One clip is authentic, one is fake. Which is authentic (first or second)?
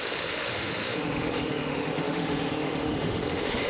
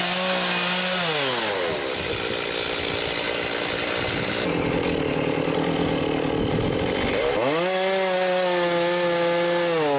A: second